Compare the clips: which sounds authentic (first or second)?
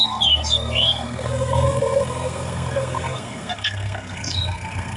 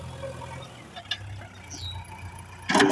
second